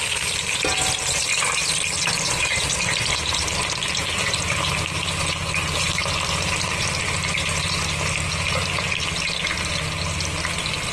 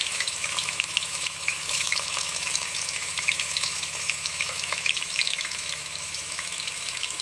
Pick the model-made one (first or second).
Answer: second